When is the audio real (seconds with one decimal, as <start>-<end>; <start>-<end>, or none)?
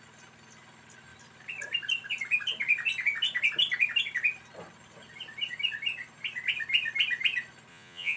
0.0-7.7